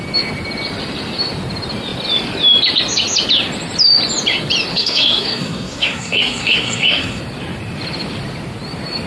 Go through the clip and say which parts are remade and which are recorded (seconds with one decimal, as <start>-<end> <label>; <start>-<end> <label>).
0.0-4.7 recorded; 4.7-7.2 remade; 7.2-9.1 recorded